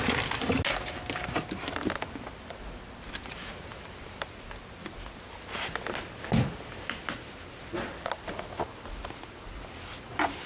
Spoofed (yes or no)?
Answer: no